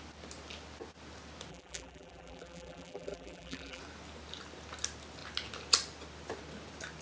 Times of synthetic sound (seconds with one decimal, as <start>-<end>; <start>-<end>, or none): 1.5-3.8